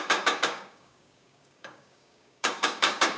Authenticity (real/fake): fake